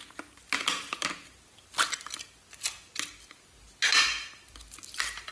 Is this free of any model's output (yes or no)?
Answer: yes